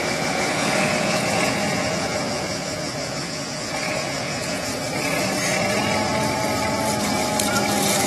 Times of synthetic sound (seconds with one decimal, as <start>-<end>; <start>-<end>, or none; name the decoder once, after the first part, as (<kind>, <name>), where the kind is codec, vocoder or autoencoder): 0.0-4.7 (vocoder, Vocos)